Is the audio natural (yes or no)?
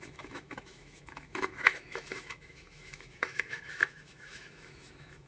no